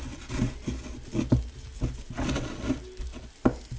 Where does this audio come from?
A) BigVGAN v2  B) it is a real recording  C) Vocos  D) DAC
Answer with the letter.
B